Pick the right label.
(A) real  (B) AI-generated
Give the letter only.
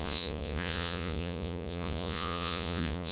B